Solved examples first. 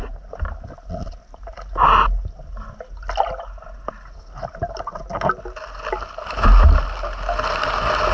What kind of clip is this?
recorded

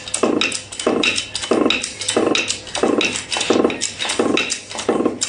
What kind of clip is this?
recorded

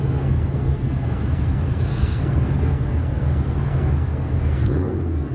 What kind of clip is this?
remade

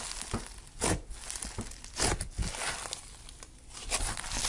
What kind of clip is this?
recorded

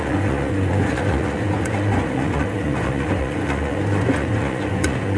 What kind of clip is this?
remade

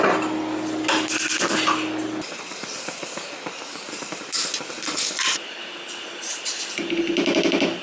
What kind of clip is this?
recorded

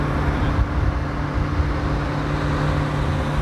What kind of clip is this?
recorded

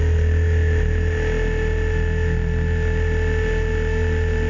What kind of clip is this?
recorded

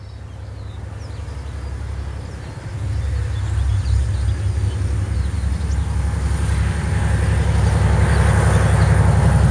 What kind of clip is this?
recorded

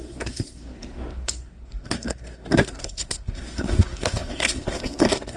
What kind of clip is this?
remade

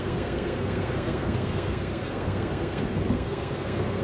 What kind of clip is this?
remade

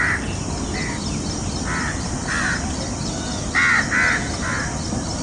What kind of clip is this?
recorded